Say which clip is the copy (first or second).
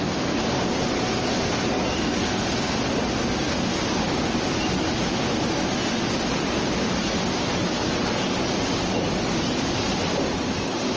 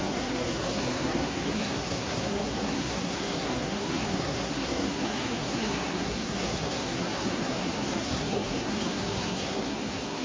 second